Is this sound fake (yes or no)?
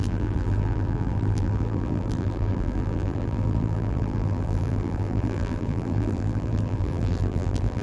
yes